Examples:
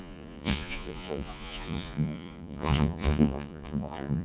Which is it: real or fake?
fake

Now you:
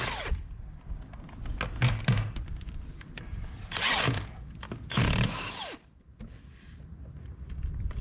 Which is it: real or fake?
real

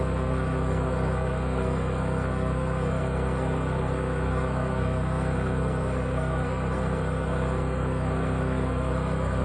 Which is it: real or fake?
fake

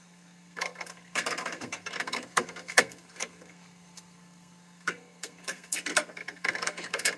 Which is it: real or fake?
fake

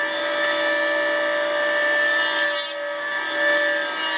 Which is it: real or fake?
real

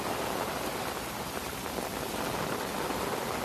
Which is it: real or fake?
real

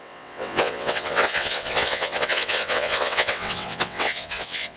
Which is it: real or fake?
fake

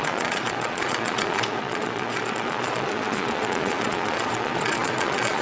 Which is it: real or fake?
fake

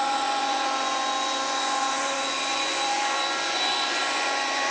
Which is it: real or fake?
fake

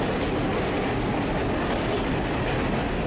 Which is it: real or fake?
real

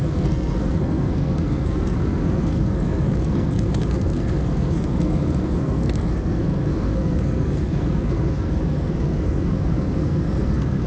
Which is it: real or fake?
fake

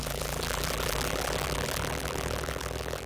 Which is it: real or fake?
fake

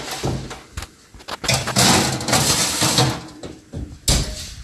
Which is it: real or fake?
real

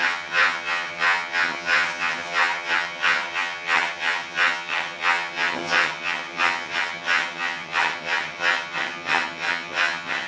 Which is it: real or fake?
fake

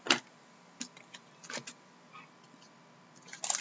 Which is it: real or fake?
real